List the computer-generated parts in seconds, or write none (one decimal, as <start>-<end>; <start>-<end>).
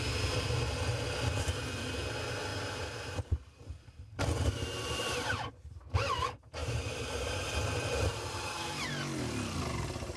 2.5-5.5; 6.6-8.9